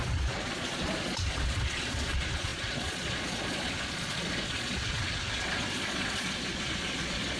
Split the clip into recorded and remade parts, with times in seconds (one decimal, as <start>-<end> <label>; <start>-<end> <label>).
0.0-7.4 remade